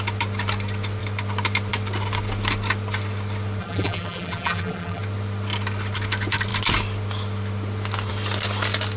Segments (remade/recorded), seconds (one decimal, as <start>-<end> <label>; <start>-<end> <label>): 0.0-3.6 recorded; 3.6-5.0 remade; 5.0-9.0 recorded